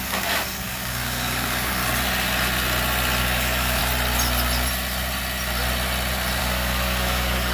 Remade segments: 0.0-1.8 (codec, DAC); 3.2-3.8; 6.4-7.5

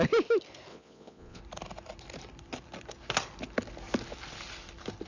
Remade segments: 0.7-1.4 (vocoder, Vocos)

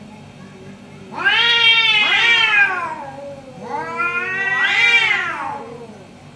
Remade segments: 1.7-2.4 (vocoder, BigVGAN v2)

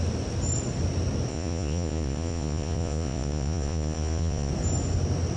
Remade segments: 1.3-4.5 (vocoder, Vocos)

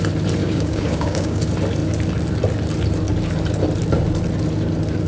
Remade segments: 0.4-1.4 (codec, DAC)

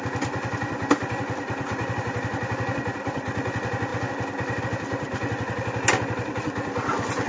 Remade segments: none

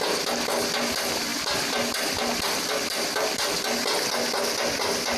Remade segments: none

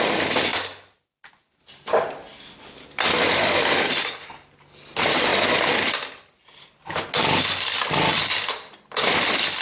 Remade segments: none